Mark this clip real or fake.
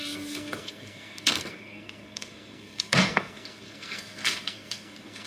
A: fake